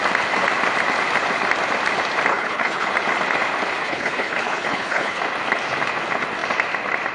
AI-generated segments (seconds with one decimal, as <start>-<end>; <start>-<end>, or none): 2.3-2.9; 3.8-5.2

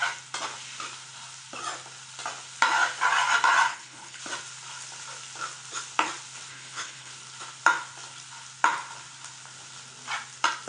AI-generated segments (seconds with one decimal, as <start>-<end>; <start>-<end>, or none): 3.7-4.2; 6.5-7.1

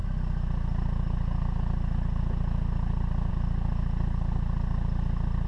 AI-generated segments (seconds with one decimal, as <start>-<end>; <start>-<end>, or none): none

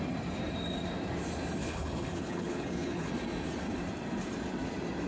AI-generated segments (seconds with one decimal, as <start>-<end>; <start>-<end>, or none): 1.6-3.1

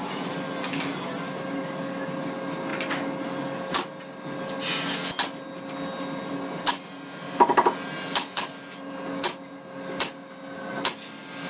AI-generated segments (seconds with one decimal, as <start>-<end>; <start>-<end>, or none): none